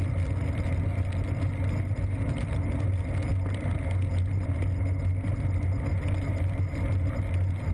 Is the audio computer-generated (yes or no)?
no